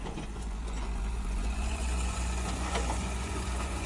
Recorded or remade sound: remade